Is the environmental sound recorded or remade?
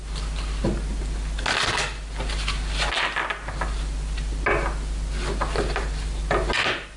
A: recorded